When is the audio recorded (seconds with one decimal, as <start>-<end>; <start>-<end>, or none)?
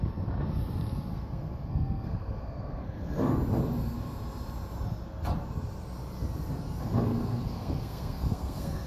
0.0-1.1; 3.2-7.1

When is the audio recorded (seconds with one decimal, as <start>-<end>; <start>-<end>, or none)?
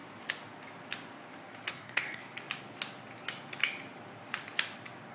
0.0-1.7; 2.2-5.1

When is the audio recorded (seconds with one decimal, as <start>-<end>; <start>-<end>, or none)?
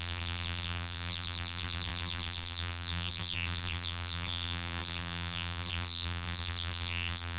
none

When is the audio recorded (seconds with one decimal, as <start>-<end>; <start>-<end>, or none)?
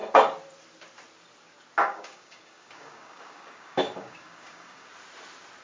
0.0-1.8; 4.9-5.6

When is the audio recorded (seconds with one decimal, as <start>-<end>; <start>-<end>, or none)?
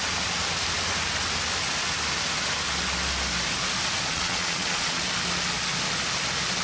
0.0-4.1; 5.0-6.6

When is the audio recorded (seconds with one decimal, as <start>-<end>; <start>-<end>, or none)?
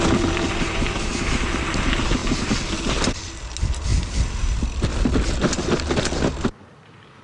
0.0-7.2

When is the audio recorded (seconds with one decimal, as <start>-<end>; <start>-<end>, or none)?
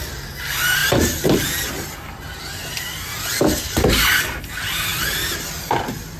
0.0-6.2